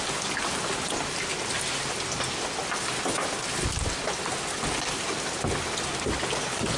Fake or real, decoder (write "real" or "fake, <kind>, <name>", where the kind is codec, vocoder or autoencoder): real